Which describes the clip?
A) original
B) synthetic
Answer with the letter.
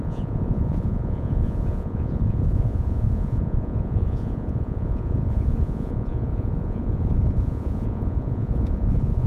B